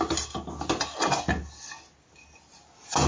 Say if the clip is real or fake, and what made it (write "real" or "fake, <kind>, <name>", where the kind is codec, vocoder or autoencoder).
real